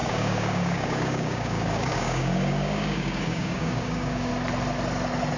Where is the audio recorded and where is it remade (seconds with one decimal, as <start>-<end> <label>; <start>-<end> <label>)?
0.0-4.3 remade; 4.3-5.4 recorded